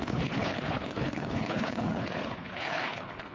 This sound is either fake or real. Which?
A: fake